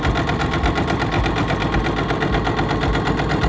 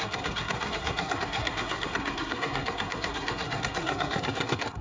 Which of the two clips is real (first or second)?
first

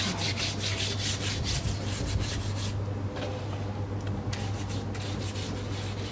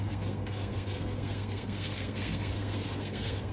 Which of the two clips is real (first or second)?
first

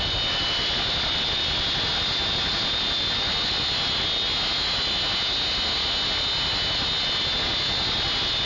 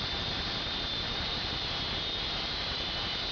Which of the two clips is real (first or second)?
first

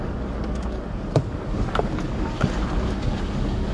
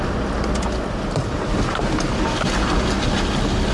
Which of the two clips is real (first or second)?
second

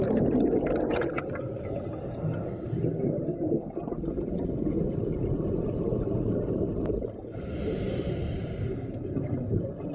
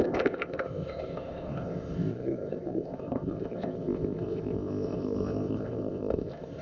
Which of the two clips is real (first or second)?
first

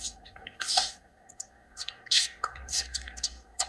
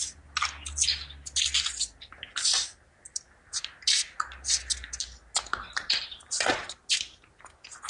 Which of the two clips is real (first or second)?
second